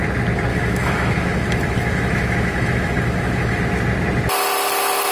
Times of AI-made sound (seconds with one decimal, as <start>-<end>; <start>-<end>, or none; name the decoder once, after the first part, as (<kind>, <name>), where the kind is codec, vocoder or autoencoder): 0.5-3.6 (autoencoder, DAC-VAE)